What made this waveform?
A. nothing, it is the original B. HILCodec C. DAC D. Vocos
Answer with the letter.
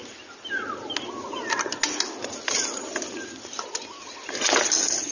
A